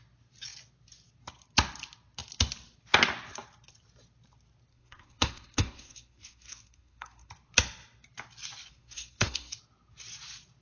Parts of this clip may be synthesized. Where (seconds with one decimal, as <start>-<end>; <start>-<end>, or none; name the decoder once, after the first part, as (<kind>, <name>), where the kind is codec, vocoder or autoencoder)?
4.7-7.3 (codec, SNAC); 8.7-9.5